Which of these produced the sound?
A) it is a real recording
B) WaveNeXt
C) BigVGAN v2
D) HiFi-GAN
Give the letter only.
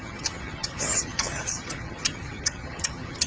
D